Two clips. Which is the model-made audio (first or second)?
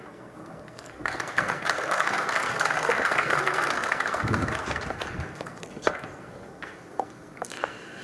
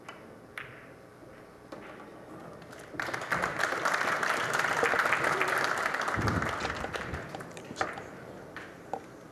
first